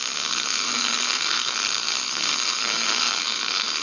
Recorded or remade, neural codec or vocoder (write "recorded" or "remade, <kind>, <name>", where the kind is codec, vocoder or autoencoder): remade, codec, SNAC